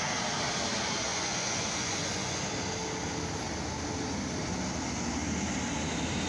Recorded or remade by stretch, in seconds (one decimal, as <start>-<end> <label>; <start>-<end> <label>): 0.0-1.1 recorded; 1.1-2.4 remade; 2.4-6.3 recorded

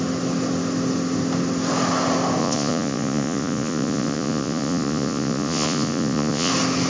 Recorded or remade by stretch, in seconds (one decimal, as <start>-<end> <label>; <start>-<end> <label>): 0.0-2.4 recorded; 2.4-6.5 remade; 6.5-6.9 recorded

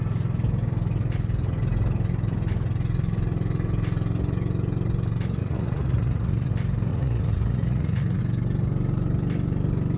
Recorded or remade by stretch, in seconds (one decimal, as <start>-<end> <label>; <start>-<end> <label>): 0.0-5.4 recorded; 5.4-6.5 remade; 6.5-6.9 recorded; 6.9-8.2 remade; 8.2-10.0 recorded

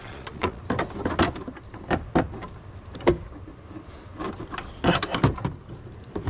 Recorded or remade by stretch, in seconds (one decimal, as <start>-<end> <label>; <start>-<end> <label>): 0.0-0.6 remade; 0.6-6.3 recorded

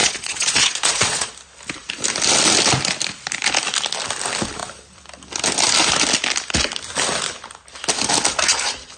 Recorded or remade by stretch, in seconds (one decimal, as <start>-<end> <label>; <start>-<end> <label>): 0.0-1.3 remade; 1.3-9.0 recorded